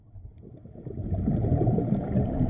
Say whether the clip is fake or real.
real